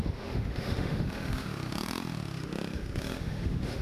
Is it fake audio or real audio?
fake